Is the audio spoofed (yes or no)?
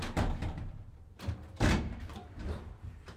yes